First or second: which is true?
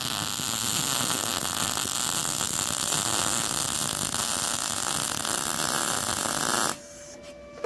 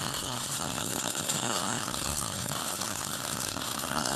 first